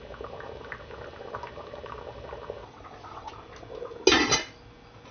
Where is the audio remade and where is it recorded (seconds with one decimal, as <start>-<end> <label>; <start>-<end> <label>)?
0.0-2.6 recorded; 2.6-3.3 remade; 3.3-5.1 recorded